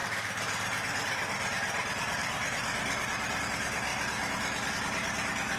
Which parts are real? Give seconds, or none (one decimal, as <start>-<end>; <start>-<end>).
none